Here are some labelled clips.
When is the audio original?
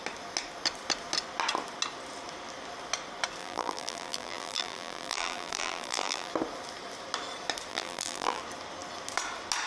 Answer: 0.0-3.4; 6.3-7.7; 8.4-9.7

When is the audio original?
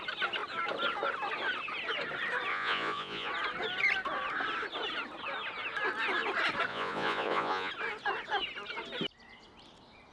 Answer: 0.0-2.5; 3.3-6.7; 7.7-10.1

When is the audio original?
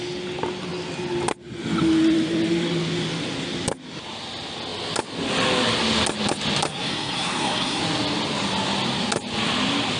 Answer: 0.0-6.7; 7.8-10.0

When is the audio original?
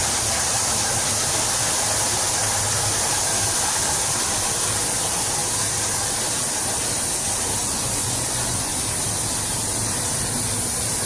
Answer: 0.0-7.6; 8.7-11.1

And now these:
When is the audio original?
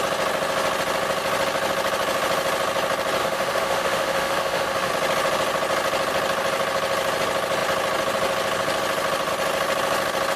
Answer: 0.0-3.2; 4.9-10.4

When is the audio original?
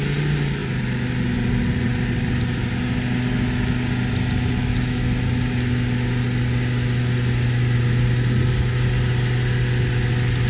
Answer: 0.0-4.6; 5.1-10.5